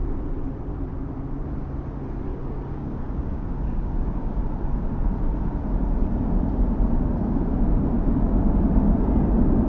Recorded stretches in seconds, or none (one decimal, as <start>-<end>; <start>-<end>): 0.0-2.3; 4.4-9.7